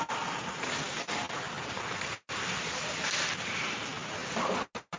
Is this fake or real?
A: real